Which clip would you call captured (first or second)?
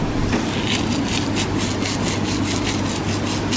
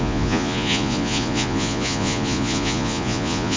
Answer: first